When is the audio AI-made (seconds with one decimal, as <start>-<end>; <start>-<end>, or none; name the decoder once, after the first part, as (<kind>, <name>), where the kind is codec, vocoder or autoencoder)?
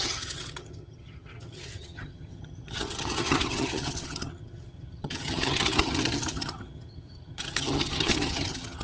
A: 0.0-8.8 (vocoder, HiFi-GAN)